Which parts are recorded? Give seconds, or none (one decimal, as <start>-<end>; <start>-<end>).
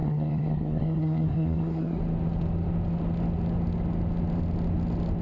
2.0-5.2